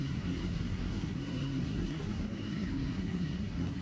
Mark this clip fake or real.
fake